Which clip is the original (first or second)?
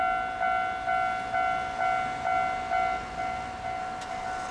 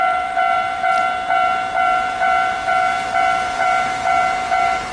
first